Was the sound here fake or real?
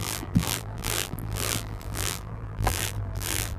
fake